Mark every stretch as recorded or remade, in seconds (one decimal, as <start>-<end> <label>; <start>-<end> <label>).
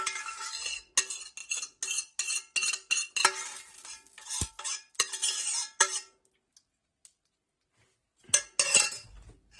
0.0-9.6 recorded